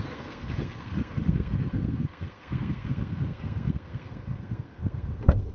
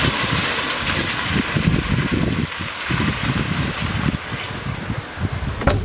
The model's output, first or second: first